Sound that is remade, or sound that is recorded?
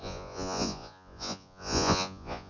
remade